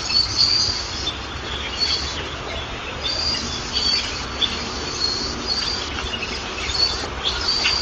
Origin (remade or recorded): recorded